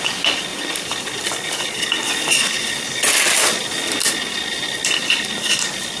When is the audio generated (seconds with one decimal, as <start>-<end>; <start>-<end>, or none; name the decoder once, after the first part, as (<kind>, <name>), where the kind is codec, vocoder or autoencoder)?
none